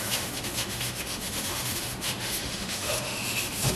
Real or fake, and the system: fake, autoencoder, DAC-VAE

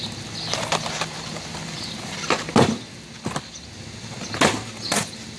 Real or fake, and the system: real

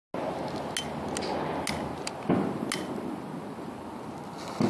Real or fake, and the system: real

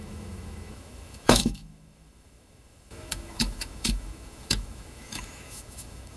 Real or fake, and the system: fake, autoencoder, DAC-VAE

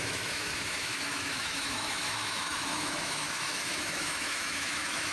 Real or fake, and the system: fake, autoencoder, DAC-VAE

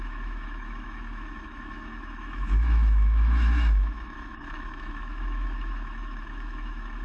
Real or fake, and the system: fake, autoencoder, DAC-VAE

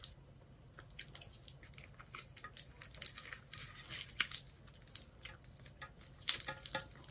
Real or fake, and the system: real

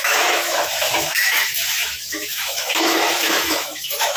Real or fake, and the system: fake, autoencoder, DAC-VAE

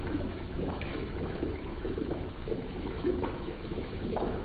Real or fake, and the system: fake, autoencoder, DAC-VAE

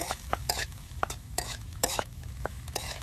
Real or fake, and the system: fake, autoencoder, DAC-VAE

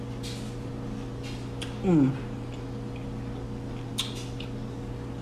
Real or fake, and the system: real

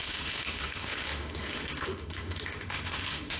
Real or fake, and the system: fake, autoencoder, DAC-VAE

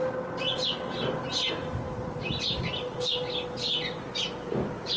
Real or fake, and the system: real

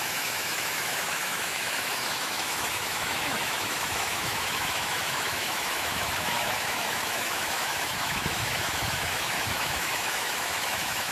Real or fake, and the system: fake, autoencoder, DAC-VAE